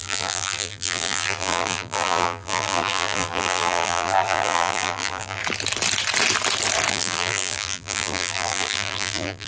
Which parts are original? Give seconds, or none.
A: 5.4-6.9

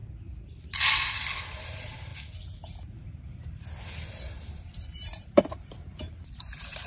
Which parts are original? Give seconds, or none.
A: 0.0-1.6; 2.1-4.1

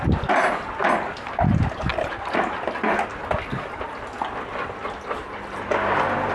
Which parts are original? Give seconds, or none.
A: 0.0-1.9; 2.4-5.2

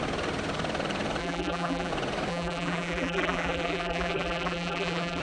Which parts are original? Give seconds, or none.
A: 0.0-1.2; 1.9-2.3